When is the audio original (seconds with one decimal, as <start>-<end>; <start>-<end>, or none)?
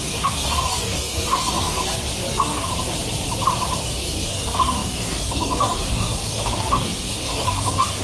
1.8-2.3; 2.7-3.8